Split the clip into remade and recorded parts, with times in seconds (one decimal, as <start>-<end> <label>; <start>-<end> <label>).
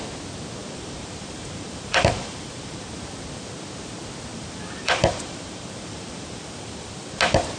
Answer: 0.0-0.6 recorded; 0.6-2.8 remade; 2.8-4.3 recorded; 4.3-6.9 remade; 6.9-7.6 recorded